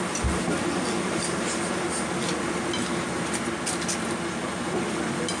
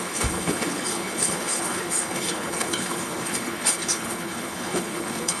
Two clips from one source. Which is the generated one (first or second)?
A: second